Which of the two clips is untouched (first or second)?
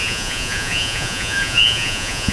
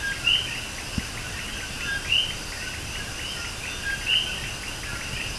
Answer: second